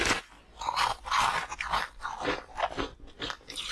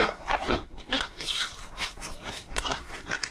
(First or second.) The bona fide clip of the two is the first